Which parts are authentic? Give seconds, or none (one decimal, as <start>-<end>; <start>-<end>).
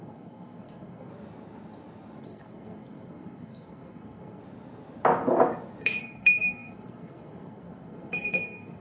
1.1-2.2; 4.4-6.0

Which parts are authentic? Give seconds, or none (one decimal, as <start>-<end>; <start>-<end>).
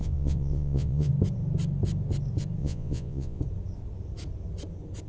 1.1-2.6; 3.4-5.1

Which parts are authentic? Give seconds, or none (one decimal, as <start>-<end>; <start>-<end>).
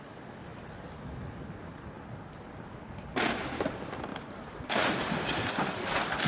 0.0-4.1; 5.5-6.3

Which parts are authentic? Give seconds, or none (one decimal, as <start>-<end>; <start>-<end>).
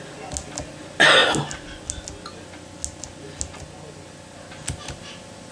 0.0-5.5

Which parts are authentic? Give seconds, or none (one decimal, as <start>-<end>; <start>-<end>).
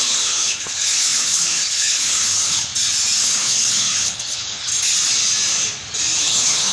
2.7-3.2; 4.7-6.2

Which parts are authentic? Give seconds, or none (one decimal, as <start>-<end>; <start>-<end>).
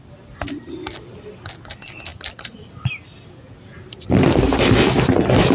0.0-5.5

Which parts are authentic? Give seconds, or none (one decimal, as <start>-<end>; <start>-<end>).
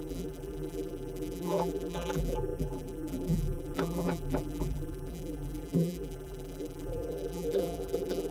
none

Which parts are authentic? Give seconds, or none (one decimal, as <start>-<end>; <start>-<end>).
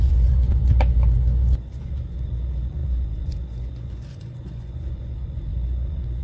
none